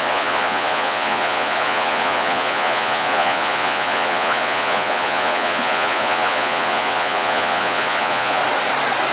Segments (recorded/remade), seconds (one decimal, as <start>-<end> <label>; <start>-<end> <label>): 0.0-8.4 remade; 8.4-9.1 recorded